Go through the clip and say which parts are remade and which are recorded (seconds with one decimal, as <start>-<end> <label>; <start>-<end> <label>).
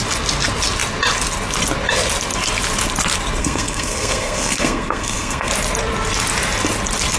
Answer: 0.0-3.4 recorded; 3.4-5.5 remade; 5.5-7.2 recorded